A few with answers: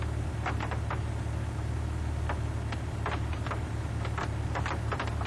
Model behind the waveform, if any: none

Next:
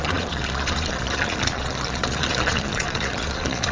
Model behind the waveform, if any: vocoder, Vocos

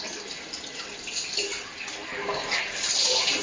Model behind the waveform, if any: none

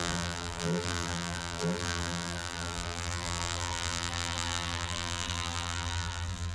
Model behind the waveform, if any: vocoder, BigVGAN v2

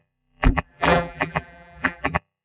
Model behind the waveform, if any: vocoder, BigVGAN v2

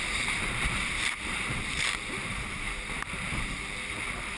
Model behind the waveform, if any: vocoder, BigVGAN v2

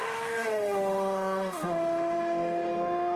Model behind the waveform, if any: autoencoder, DAC-VAE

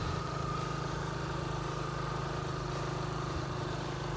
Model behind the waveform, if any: vocoder, BigVGAN v2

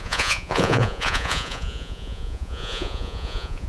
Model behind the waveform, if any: vocoder, Vocos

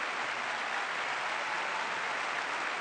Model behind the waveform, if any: none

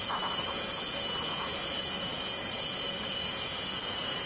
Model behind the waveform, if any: vocoder, Vocos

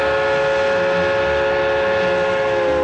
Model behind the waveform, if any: none